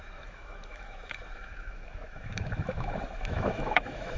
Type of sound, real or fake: fake